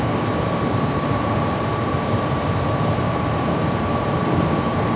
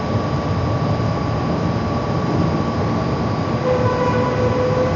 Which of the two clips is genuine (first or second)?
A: second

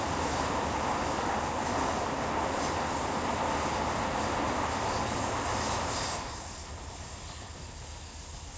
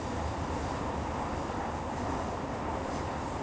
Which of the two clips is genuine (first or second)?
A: first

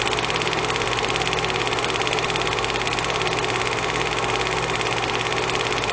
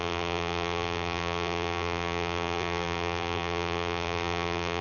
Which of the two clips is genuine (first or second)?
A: first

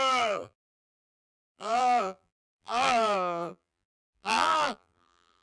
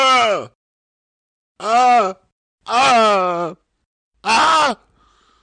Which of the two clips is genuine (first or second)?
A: second